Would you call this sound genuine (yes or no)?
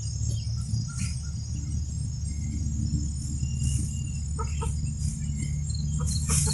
yes